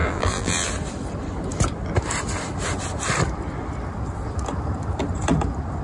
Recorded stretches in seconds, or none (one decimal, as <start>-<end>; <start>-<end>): 0.7-5.8